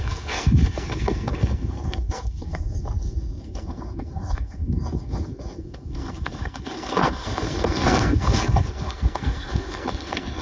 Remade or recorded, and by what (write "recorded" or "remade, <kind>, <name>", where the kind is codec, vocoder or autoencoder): remade, codec, SNAC